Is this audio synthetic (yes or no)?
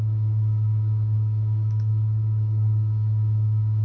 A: yes